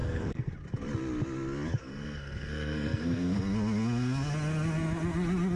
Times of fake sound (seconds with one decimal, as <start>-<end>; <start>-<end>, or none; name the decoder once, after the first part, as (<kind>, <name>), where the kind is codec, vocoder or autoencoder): 0.0-0.5 (codec, SNAC); 1.8-3.4